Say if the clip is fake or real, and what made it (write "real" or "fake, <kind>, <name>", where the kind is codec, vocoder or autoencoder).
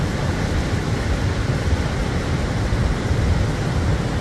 real